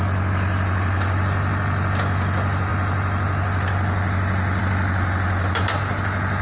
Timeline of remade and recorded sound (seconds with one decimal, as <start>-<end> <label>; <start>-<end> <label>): 0.0-6.4 recorded